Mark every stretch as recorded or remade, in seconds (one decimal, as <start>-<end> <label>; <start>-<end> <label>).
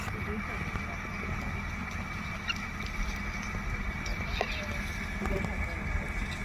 0.0-1.8 recorded; 1.8-2.3 remade; 2.3-4.1 recorded; 4.1-4.7 remade; 4.7-6.4 recorded